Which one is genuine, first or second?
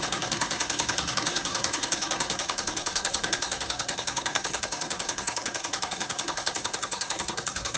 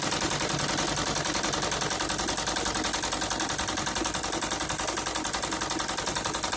second